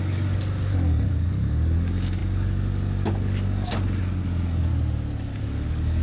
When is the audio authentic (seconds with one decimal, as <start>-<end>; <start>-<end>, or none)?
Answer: 4.7-5.4